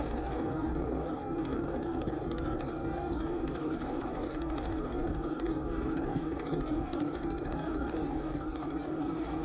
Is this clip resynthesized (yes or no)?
yes